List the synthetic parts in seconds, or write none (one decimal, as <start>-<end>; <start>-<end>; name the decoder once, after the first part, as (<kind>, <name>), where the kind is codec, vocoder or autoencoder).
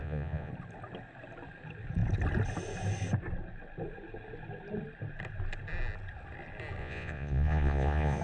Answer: 0.0-0.5 (vocoder, Vocos); 6.8-8.2